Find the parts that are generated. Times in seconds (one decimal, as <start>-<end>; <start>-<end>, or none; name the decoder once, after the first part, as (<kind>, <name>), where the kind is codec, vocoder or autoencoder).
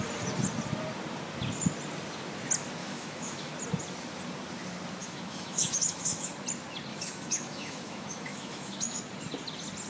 2.8-3.5 (autoencoder, DAC-VAE); 5.0-6.3; 6.9-9.0